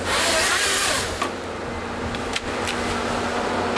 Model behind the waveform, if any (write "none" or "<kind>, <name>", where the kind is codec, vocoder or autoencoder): none